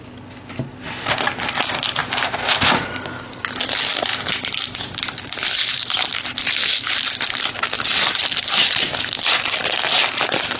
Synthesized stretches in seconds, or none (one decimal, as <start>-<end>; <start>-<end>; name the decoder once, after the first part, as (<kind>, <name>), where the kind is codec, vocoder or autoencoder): none